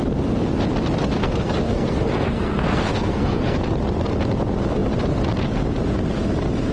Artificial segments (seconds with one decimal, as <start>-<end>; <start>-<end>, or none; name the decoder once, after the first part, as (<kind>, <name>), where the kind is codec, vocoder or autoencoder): 1.2-3.6 (codec, SNAC)